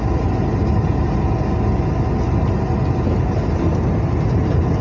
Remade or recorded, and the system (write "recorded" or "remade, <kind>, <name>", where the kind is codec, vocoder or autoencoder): recorded